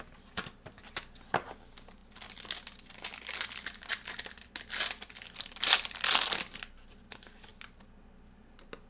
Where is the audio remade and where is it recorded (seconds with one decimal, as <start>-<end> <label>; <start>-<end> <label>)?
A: 0.0-8.9 recorded